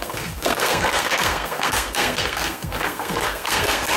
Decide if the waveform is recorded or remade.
remade